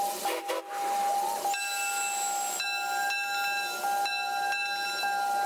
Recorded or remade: recorded